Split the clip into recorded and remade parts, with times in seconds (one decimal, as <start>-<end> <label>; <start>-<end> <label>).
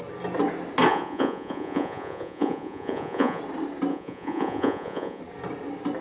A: 0.0-0.9 recorded; 0.9-3.4 remade; 3.4-3.9 recorded; 3.9-5.2 remade; 5.2-6.0 recorded